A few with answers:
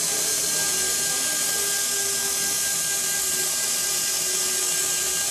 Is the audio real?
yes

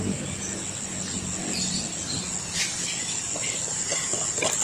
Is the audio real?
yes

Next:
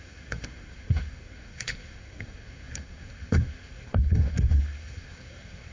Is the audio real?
no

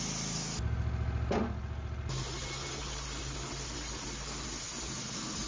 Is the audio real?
yes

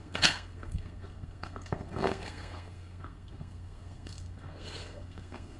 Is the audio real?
no